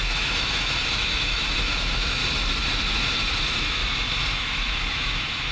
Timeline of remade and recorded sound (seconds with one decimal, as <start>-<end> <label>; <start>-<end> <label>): 0.0-2.2 remade; 2.2-3.4 recorded; 3.4-3.8 remade; 3.8-4.3 recorded; 4.3-5.5 remade

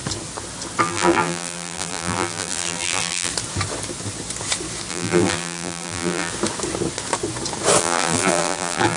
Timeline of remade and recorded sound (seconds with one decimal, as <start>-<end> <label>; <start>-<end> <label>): 0.0-0.8 recorded; 0.8-3.3 remade; 3.3-4.9 recorded; 4.9-6.3 remade; 6.3-7.8 recorded; 7.8-9.0 remade

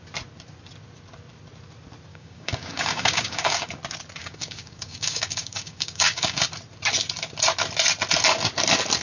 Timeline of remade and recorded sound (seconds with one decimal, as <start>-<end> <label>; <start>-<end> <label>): 0.0-2.1 recorded; 2.1-3.8 remade; 3.8-4.2 recorded; 4.2-6.4 remade; 6.4-9.0 recorded

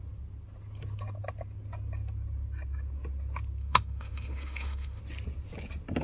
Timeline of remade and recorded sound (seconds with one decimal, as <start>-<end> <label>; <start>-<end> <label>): 0.0-3.6 recorded; 3.6-5.0 remade; 5.0-6.0 recorded

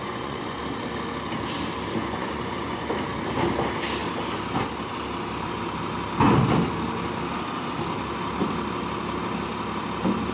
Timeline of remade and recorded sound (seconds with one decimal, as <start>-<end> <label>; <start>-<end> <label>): 0.0-0.6 remade; 0.6-2.0 recorded; 2.0-2.9 remade; 2.9-10.3 recorded

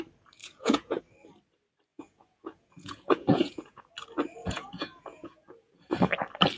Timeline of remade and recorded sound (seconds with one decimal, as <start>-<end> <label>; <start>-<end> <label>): 0.0-0.4 recorded; 0.4-1.0 remade; 1.0-1.9 recorded; 1.9-3.9 remade; 3.9-4.4 recorded; 4.4-5.9 remade; 5.9-6.6 recorded

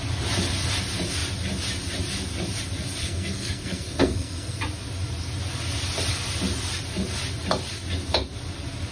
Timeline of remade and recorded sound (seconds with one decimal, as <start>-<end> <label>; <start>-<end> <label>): 0.0-3.0 recorded; 3.0-4.6 remade; 4.6-8.9 recorded

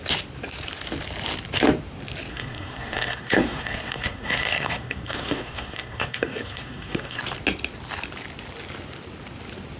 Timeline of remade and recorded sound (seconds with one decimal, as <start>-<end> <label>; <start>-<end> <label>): 0.0-2.3 recorded; 2.3-7.2 remade; 7.2-9.8 recorded